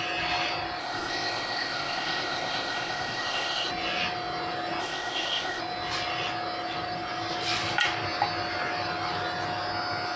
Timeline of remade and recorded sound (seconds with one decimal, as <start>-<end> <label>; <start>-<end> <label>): 0.0-0.8 recorded; 0.8-3.7 remade; 3.7-4.8 recorded; 4.8-5.6 remade; 5.6-10.2 recorded